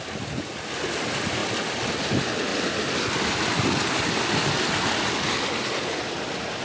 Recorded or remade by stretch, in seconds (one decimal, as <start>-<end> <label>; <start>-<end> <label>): 0.0-6.6 recorded